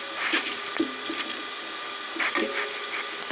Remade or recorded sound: recorded